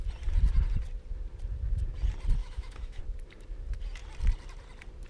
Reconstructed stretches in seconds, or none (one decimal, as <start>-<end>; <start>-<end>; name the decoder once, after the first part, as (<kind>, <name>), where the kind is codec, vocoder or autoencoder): 2.4-3.0 (autoencoder, DAC-VAE)